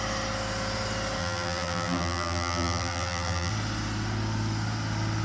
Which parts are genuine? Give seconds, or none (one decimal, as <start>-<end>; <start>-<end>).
0.0-1.2; 3.5-5.2